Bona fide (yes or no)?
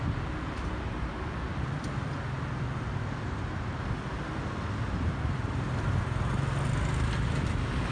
yes